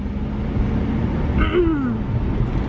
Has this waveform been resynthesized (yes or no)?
no